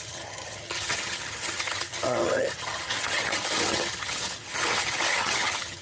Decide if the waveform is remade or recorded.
remade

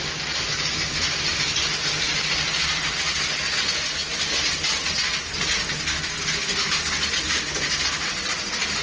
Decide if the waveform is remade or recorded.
recorded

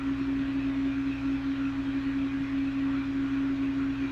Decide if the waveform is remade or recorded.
recorded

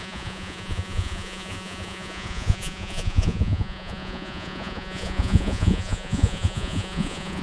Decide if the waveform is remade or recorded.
remade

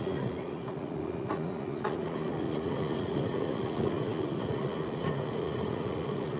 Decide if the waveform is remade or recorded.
remade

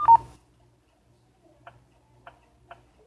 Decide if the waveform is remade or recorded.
recorded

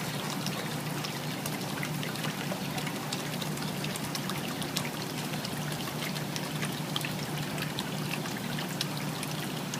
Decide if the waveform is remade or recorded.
recorded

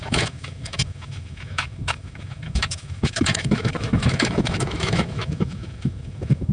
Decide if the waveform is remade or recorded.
remade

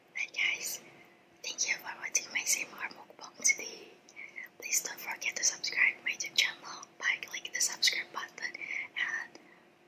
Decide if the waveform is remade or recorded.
remade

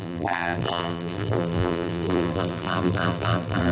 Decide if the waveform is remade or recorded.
remade